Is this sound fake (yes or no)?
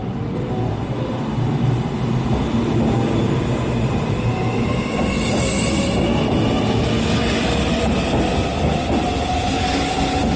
no